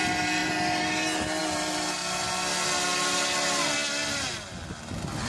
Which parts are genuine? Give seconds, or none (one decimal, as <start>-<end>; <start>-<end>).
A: 0.0-5.3